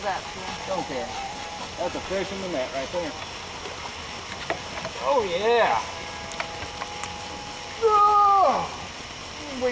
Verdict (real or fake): real